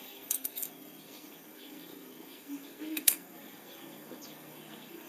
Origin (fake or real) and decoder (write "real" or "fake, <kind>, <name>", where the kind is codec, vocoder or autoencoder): fake, codec, SNAC